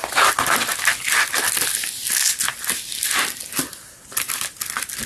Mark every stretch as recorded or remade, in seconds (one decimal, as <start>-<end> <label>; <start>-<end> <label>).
0.0-5.1 recorded